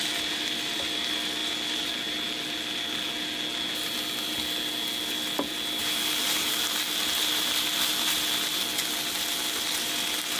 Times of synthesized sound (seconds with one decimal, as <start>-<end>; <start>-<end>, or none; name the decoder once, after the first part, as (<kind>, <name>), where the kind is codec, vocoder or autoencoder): none